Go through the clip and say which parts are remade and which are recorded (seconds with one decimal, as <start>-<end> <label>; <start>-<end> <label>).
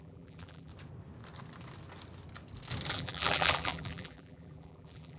0.0-0.7 remade; 0.7-2.9 recorded; 2.9-5.2 remade